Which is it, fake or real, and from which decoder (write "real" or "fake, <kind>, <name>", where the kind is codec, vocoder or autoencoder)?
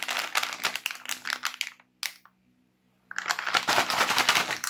real